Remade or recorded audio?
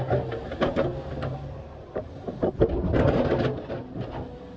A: recorded